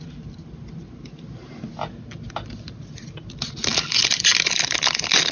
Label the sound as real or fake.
real